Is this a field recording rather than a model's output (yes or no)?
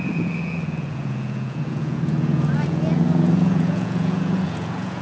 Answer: no